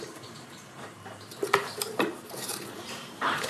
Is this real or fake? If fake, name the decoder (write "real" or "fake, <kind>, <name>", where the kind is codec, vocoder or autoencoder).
fake, vocoder, BigVGAN v2